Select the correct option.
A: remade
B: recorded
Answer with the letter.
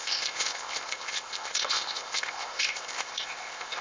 A